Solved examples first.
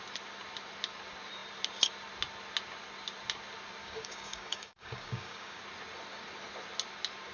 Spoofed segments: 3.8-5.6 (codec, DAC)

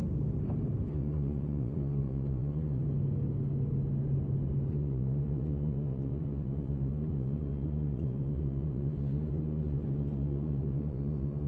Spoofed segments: 0.9-2.8 (vocoder, Vocos); 4.7-11.5

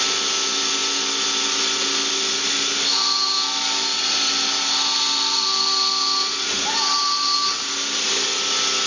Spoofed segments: none